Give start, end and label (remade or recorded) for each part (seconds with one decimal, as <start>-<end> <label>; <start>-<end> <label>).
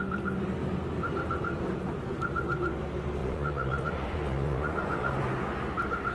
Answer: 0.0-3.2 recorded; 3.2-5.3 remade; 5.3-6.1 recorded